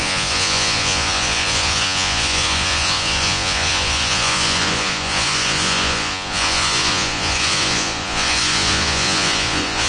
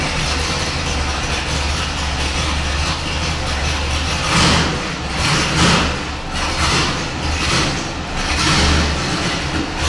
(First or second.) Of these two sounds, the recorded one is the second